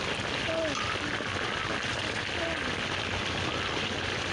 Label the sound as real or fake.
real